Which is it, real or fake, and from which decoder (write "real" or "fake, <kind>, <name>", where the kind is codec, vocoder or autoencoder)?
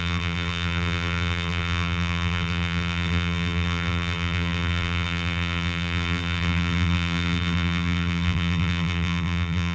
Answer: fake, vocoder, BigVGAN v2